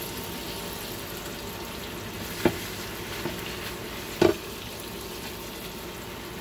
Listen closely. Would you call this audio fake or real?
real